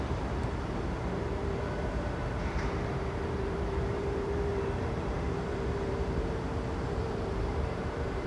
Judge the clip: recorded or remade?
remade